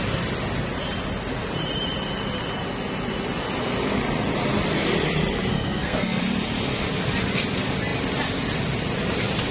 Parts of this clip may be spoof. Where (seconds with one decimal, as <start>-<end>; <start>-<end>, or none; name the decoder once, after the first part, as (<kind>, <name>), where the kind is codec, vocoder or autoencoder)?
5.5-6.2 (codec, SNAC)